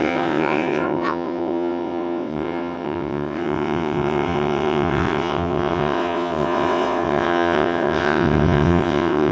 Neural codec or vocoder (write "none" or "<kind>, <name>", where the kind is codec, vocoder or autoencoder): vocoder, WaveNeXt